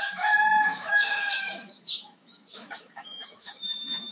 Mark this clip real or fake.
fake